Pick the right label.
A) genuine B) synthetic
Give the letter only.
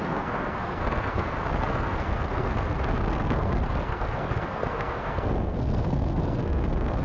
B